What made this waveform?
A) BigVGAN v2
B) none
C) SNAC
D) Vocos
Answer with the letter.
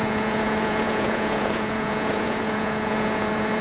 D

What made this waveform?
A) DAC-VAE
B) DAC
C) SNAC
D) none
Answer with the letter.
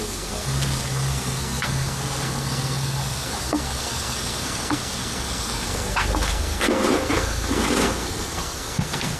C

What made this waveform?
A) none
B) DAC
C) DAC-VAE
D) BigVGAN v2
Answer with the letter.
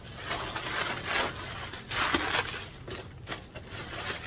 A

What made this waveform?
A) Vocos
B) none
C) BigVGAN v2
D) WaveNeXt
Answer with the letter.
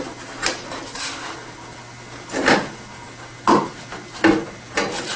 B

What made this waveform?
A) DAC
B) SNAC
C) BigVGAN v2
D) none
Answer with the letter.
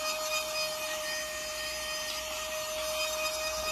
D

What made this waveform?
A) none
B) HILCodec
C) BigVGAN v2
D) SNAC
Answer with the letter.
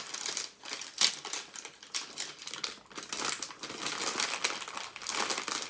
A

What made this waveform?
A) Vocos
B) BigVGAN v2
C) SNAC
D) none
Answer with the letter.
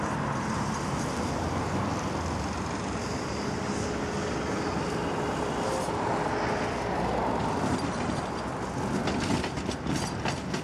D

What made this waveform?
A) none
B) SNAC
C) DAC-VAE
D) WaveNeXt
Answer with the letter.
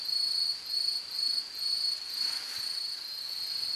A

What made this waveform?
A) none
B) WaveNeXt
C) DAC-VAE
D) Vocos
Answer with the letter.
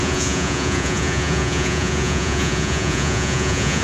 D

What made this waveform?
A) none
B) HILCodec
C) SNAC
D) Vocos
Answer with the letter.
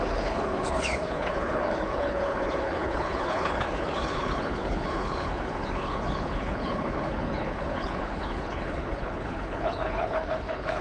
B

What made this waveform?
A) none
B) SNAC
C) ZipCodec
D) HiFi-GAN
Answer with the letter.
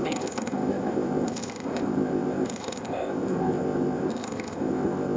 C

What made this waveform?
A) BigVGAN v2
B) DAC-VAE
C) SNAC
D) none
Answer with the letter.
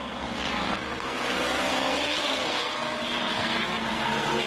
C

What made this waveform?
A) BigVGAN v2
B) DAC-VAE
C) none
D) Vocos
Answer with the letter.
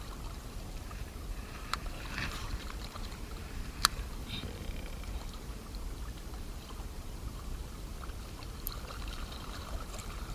A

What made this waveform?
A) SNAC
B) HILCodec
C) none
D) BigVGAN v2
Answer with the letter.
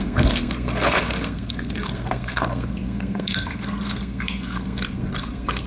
A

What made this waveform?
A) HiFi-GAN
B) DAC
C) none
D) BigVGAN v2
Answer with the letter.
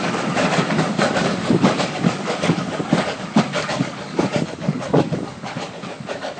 B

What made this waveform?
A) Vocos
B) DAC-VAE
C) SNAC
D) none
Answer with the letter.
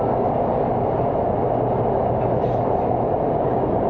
D